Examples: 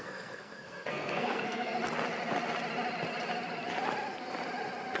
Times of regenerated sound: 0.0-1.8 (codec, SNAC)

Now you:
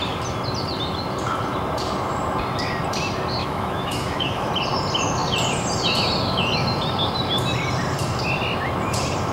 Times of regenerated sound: 3.4-4.5 (autoencoder, DAC-VAE)

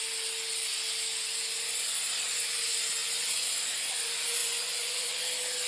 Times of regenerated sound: 3.0-3.5 (vocoder, Vocos); 4.4-5.2

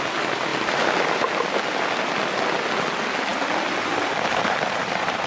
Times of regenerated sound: 4.3-5.3 (vocoder, BigVGAN v2)

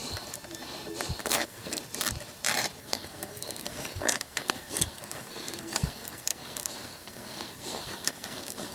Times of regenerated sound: 1.2-1.8 (codec, SNAC); 2.8-8.7

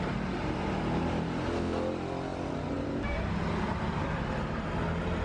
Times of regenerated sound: none

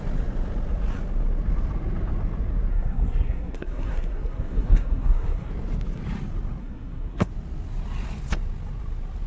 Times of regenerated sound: 2.7-5.5 (codec, SNAC); 6.6-7.3

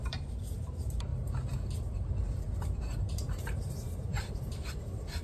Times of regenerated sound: 0.0-1.1 (vocoder, BigVGAN v2); 2.8-5.2